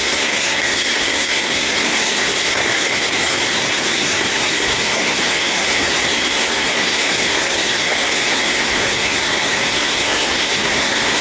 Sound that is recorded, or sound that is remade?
remade